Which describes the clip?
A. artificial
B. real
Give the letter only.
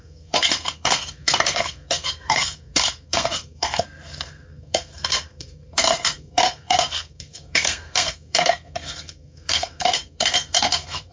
A